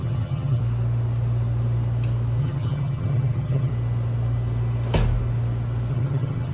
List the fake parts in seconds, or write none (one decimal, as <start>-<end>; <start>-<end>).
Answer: 0.0-0.6; 2.4-3.7; 5.9-6.5